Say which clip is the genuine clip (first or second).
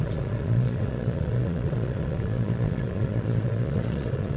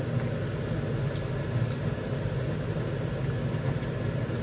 second